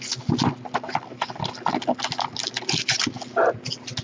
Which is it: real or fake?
real